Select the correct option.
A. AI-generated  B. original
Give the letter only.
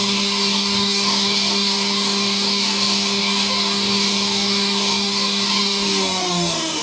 A